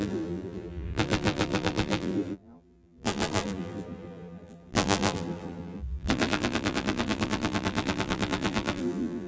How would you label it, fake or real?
fake